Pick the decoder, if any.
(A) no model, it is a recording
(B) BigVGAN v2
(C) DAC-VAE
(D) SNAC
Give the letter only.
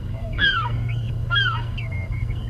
D